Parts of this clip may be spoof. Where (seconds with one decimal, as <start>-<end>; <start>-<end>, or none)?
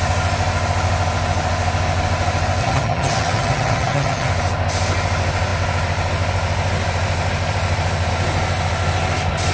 2.6-4.3